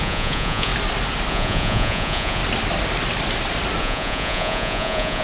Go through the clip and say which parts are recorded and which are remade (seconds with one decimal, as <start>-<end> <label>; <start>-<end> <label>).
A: 0.0-0.7 remade; 0.7-1.3 recorded; 1.3-2.4 remade; 2.4-3.8 recorded; 3.8-5.2 remade